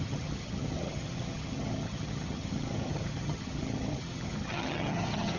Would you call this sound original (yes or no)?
no